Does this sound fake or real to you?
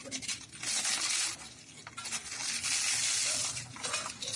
real